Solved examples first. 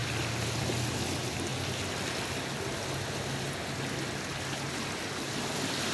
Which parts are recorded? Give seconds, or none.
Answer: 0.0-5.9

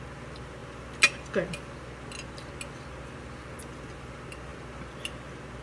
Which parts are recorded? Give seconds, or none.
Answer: 0.0-5.6

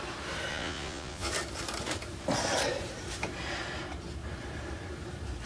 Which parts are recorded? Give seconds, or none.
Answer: 0.0-0.5; 1.3-5.5

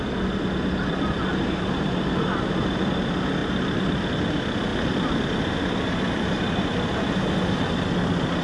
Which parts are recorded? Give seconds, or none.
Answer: 0.0-1.3; 3.0-3.4; 4.1-8.4

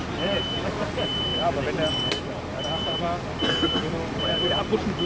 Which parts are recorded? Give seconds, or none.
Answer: 0.0-5.1

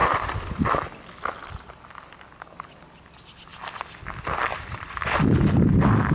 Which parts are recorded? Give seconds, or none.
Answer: 0.7-4.5; 5.2-6.1

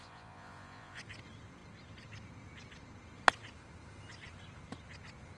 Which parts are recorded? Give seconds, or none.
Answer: 1.0-5.4